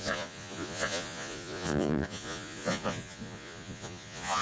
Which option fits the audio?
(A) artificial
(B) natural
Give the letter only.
A